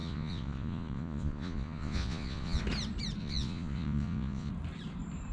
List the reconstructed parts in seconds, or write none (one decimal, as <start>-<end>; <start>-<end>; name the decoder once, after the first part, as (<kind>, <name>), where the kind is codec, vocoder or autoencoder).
0.0-2.6 (vocoder, Vocos); 3.2-4.5